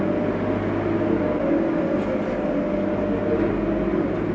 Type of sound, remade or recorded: recorded